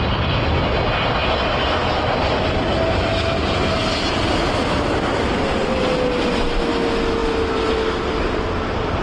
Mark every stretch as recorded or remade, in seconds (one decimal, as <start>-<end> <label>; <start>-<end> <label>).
0.0-9.0 recorded